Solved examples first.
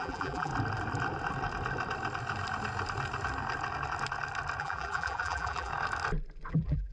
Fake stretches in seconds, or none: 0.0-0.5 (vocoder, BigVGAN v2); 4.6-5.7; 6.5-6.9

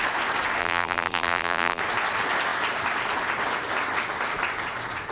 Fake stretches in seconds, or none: 0.6-1.8 (vocoder, BigVGAN v2)

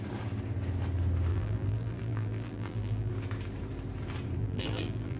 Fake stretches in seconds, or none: 1.3-3.1 (vocoder, BigVGAN v2); 4.4-5.2